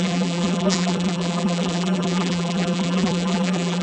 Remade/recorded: remade